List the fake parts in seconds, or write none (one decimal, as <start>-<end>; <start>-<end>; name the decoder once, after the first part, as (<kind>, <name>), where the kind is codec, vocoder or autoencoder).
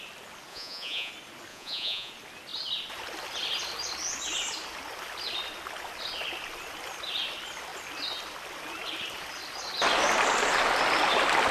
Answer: 0.5-1.1 (vocoder, Vocos); 1.5-2.1